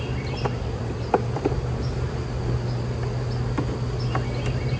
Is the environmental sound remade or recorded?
recorded